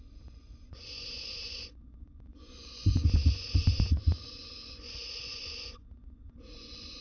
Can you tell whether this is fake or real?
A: fake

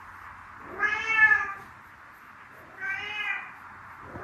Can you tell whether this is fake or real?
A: real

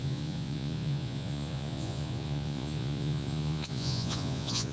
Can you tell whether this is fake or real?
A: fake